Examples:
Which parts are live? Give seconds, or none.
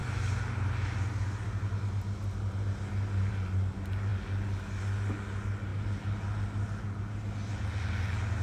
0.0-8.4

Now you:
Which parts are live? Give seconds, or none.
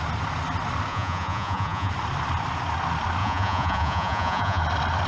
0.0-0.9; 1.9-3.2; 4.6-5.1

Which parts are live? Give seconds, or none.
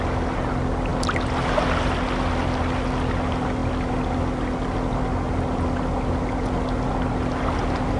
0.0-8.0